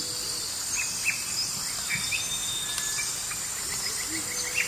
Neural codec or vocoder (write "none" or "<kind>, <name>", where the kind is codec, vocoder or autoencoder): none